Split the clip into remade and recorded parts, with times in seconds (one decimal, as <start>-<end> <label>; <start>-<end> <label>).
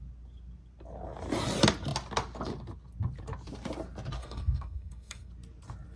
0.0-4.2 recorded; 4.2-5.3 remade; 5.3-6.0 recorded